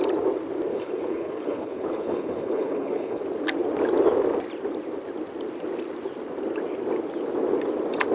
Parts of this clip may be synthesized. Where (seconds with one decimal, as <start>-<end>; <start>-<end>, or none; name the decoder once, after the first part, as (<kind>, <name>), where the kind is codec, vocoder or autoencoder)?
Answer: 0.7-3.2 (codec, HILCodec)